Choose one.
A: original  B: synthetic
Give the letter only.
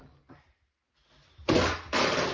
A